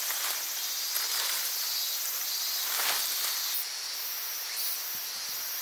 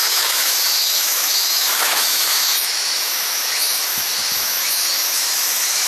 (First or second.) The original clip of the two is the first